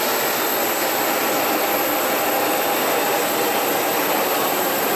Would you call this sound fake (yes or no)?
no